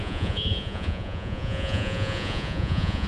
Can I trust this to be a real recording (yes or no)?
no